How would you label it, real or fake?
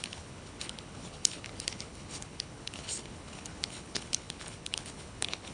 fake